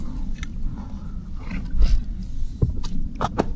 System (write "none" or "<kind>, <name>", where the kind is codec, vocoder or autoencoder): none